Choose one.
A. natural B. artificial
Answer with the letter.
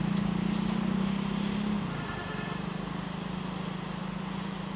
A